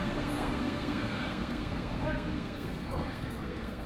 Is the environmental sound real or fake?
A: fake